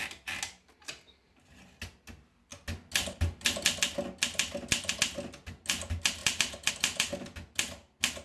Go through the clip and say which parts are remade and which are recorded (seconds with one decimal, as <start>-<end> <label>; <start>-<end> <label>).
0.0-8.2 recorded

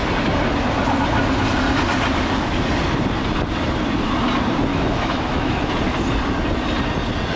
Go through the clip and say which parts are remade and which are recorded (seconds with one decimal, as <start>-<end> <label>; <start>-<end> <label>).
0.0-4.7 recorded; 4.7-5.7 remade; 5.7-7.4 recorded

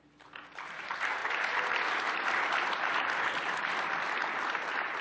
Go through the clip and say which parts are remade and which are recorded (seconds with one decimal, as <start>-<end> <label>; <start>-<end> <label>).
0.0-5.0 recorded